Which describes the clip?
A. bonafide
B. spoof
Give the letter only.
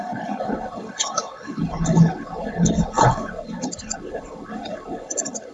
B